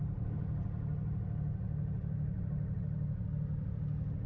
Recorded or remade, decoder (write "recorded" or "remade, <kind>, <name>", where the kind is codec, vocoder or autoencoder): recorded